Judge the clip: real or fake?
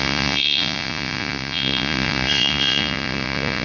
fake